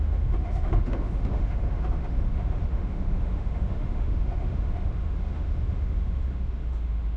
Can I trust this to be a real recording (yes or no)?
no